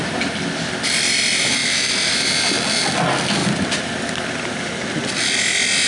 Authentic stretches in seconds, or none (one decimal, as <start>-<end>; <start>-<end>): 0.0-5.9